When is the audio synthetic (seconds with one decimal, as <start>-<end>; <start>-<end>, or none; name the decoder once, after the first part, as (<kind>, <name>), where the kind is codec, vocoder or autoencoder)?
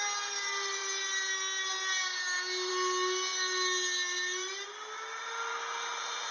none